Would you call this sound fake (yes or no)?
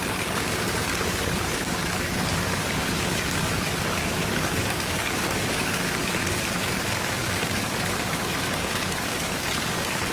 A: yes